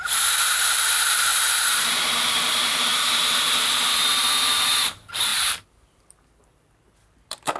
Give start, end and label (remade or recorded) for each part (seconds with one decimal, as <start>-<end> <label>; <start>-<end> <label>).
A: 0.0-1.3 remade; 1.3-1.8 recorded; 1.8-7.6 remade